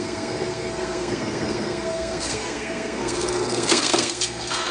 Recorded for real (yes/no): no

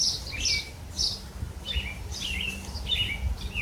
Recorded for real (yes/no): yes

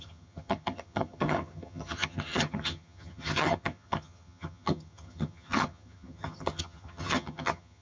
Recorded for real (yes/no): no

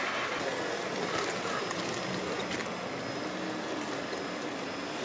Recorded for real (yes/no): yes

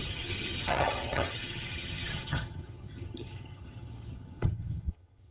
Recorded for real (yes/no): no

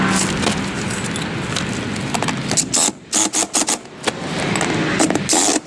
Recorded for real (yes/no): yes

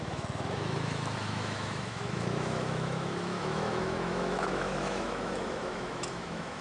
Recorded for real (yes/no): no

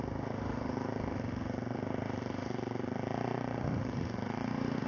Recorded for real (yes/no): no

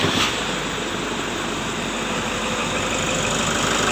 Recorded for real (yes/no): yes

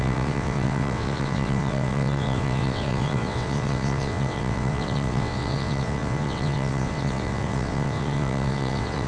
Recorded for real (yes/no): no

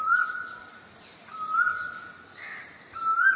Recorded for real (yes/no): yes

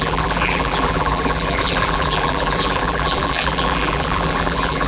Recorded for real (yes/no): no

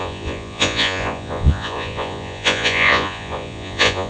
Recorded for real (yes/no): no